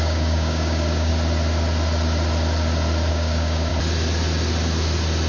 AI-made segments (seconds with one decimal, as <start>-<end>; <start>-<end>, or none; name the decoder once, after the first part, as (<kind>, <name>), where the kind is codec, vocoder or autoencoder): 0.0-1.1 (codec, DAC); 3.1-3.7